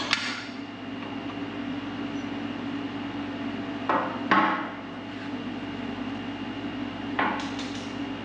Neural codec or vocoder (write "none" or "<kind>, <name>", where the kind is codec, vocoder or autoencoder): none